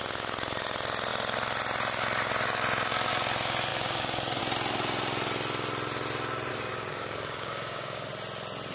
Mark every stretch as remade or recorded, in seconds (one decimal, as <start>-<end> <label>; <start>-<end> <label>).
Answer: 0.0-3.7 recorded; 3.7-4.4 remade; 4.4-6.5 recorded; 6.5-8.1 remade; 8.1-8.7 recorded